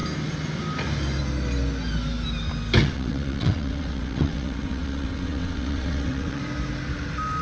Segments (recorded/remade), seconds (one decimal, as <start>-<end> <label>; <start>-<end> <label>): 0.0-2.8 recorded; 2.8-6.4 remade; 6.4-7.4 recorded